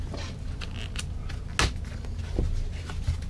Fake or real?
real